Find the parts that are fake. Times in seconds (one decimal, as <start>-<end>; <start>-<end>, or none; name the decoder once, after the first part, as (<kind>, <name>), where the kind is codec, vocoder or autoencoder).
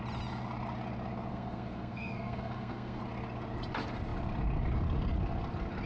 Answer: 1.3-3.0 (codec, SNAC)